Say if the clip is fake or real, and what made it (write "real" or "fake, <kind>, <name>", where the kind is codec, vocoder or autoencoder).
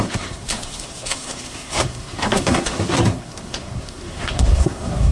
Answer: fake, codec, SNAC